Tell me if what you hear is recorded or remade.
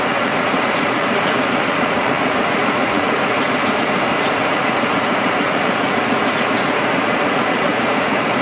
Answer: remade